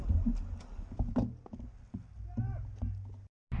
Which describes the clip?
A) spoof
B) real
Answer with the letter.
B